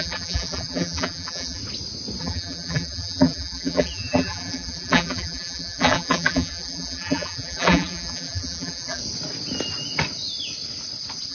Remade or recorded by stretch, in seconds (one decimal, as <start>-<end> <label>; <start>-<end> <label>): 0.0-1.6 remade; 1.6-2.2 recorded; 2.2-9.0 remade; 9.0-11.3 recorded